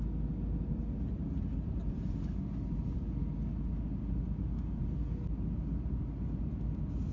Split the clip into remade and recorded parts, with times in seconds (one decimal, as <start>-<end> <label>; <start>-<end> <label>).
0.0-7.1 recorded